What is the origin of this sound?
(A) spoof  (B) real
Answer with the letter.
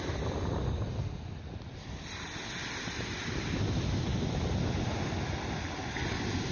B